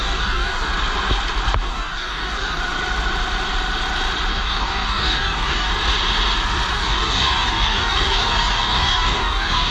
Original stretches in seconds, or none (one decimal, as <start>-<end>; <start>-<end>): 0.7-1.6; 2.6-4.3; 5.7-6.7